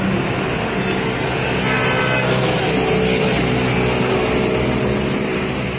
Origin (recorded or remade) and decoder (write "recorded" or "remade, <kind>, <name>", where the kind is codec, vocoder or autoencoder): recorded